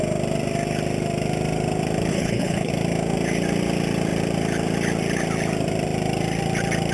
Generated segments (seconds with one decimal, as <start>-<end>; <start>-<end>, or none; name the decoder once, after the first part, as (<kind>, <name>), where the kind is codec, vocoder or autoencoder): 2.1-2.7 (codec, HILCodec)

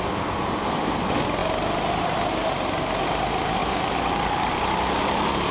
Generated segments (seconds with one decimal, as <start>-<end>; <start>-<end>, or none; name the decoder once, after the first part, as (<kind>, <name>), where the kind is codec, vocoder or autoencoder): 3.6-4.5 (vocoder, BigVGAN v2)

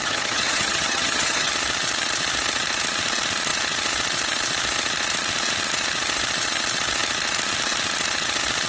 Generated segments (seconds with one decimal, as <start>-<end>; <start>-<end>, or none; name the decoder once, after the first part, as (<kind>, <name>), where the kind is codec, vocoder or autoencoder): 0.0-1.5 (vocoder, HiFi-GAN)

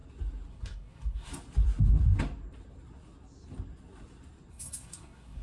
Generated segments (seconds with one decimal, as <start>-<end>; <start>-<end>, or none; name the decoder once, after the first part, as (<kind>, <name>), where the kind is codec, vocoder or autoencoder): 0.5-1.3 (codec, SNAC); 4.5-5.4

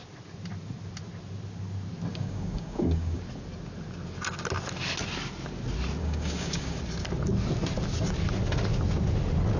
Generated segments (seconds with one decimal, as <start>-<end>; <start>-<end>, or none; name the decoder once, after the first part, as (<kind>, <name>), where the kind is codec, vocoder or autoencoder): 2.1-3.2 (codec, DAC); 6.0-6.8

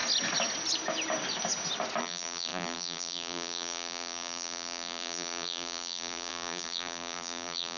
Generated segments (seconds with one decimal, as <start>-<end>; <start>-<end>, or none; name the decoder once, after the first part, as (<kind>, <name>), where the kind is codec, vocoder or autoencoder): 2.0-7.8 (vocoder, BigVGAN v2)

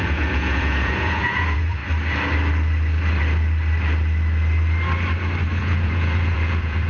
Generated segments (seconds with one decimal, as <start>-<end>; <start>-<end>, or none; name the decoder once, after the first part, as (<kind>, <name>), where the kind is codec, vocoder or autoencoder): 0.0-1.8 (vocoder, Vocos); 5.6-6.9

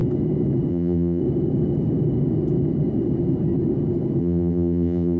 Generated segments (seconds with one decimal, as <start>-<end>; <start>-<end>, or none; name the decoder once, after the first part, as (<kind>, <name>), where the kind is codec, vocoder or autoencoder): 0.7-1.2 (vocoder, BigVGAN v2); 4.2-5.2